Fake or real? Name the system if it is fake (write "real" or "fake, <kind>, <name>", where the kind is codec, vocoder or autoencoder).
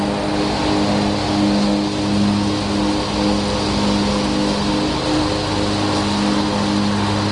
real